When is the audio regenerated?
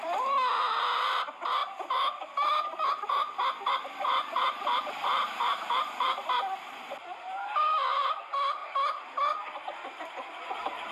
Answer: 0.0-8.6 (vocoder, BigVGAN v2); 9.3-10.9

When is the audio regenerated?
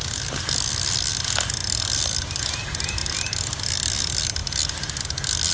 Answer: none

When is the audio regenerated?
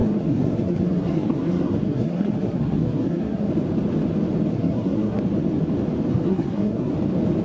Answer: 0.0-3.5 (codec, SNAC); 4.5-5.2; 6.1-6.9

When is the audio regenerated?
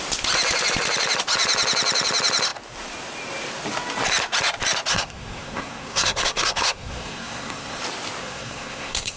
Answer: 4.9-7.8 (codec, SNAC); 8.2-9.2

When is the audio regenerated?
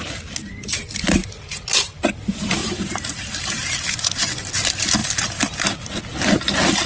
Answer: 1.2-2.0 (vocoder, BigVGAN v2); 2.6-4.2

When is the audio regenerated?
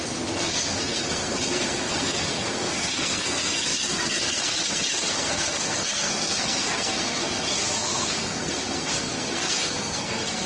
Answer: 0.0-10.5 (codec, SNAC)